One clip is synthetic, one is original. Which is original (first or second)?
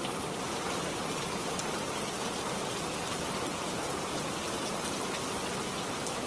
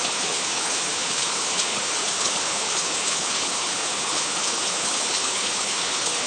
first